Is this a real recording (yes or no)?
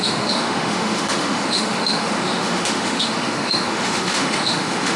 no